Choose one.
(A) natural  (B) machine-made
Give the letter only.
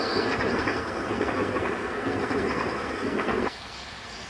B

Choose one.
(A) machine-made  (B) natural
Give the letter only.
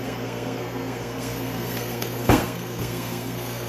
A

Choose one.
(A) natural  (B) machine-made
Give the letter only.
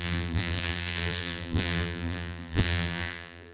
B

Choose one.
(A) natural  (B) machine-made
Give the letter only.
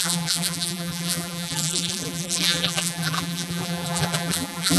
B